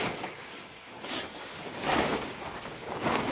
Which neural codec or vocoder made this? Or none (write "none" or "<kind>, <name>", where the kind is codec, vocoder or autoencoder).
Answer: codec, DAC